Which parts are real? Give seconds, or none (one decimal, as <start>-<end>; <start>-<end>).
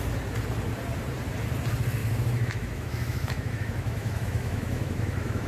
0.0-2.0